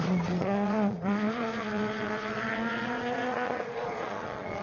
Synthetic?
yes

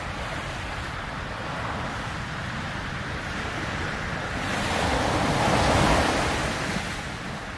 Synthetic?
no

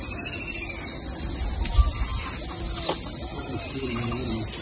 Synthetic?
no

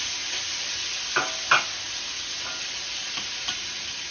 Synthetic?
no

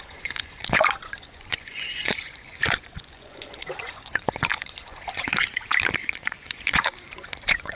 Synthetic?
yes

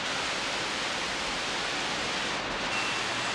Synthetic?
no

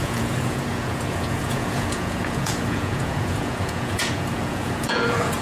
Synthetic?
yes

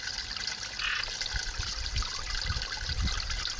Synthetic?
no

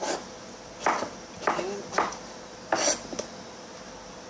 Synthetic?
no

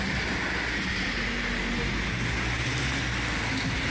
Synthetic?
no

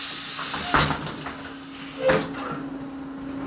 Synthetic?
no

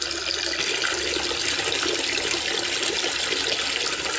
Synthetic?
no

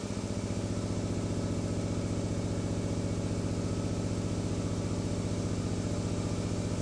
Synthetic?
no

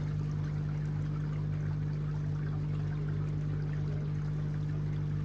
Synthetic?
no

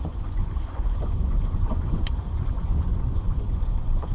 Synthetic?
yes